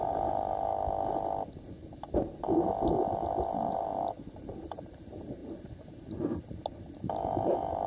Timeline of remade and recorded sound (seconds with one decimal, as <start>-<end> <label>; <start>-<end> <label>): 0.0-0.7 remade; 0.7-2.4 recorded; 2.4-5.4 remade; 5.4-7.0 recorded; 7.0-7.9 remade